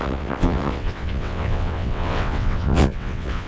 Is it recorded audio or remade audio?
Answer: remade